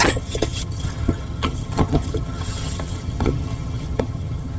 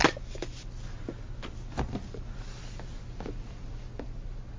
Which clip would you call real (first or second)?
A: second